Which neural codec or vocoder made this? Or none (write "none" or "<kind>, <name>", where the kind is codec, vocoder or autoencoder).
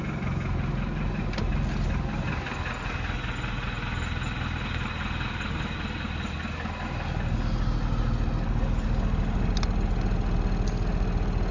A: none